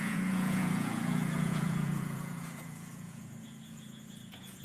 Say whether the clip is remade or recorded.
remade